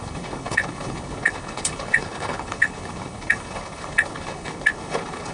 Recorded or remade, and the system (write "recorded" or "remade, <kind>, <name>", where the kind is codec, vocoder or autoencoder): remade, codec, HILCodec